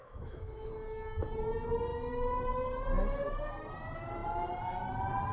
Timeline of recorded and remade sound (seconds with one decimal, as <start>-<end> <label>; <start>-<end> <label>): 0.0-0.7 remade; 0.7-5.3 recorded